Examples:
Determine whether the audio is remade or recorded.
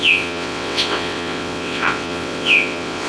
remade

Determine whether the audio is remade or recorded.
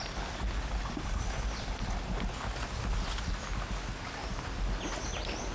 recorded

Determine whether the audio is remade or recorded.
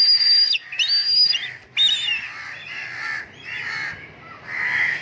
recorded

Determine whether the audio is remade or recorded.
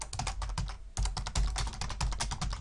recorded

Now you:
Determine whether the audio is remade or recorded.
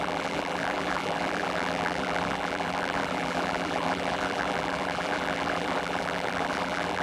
remade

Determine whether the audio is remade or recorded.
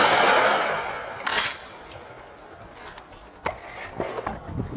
recorded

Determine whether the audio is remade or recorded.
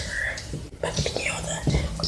recorded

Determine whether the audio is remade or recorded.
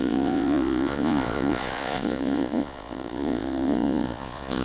remade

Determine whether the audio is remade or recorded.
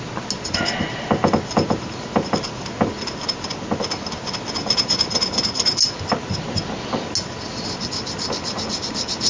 recorded